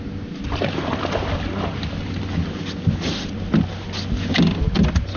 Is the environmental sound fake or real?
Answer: real